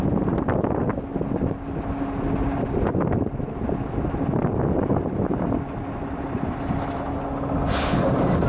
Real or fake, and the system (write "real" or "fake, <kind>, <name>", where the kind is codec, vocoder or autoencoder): real